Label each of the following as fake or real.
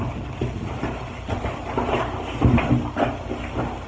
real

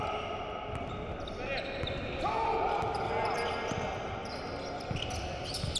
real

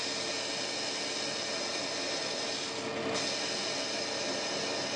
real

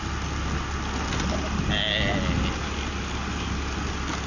real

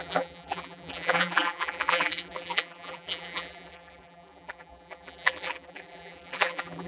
fake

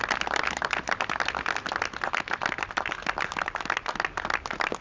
real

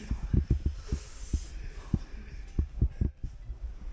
real